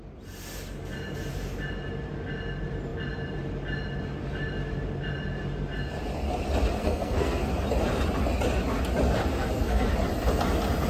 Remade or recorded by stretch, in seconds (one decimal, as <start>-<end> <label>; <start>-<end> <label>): 0.0-6.8 recorded; 6.8-7.5 remade; 7.5-9.3 recorded; 9.3-9.9 remade; 9.9-10.9 recorded

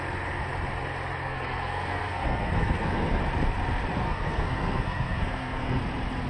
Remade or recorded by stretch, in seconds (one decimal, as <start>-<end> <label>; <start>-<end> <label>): 0.0-1.2 recorded; 1.2-3.2 remade; 3.2-4.0 recorded; 4.0-5.8 remade; 5.8-6.3 recorded

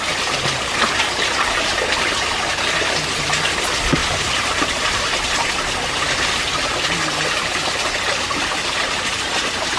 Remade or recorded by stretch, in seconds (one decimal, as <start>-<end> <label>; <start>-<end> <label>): 0.0-4.0 recorded; 4.0-5.0 remade; 5.0-9.8 recorded

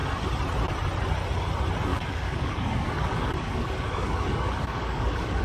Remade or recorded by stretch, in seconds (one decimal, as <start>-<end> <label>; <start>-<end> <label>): 0.0-1.9 recorded; 1.9-5.4 remade